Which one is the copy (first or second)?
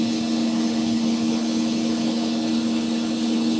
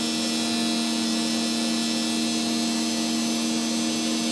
first